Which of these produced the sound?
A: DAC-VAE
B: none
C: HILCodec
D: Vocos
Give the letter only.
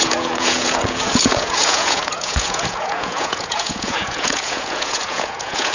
D